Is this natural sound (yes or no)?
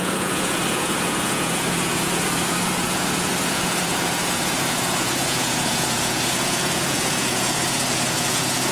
no